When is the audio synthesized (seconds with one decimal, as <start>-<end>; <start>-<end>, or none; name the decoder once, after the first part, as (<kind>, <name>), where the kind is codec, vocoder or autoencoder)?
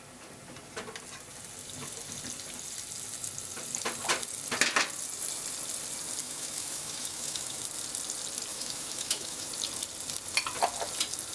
6.2-7.6 (autoencoder, DAC-VAE); 8.5-9.5